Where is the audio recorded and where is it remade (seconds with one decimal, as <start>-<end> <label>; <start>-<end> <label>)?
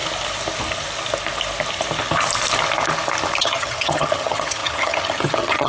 0.0-3.4 recorded; 3.4-5.7 remade